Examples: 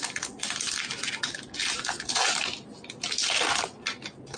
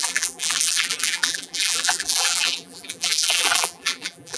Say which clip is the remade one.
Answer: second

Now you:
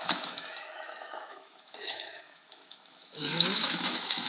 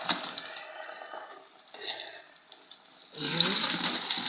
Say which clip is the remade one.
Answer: first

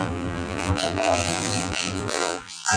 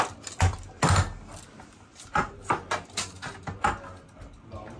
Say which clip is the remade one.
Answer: first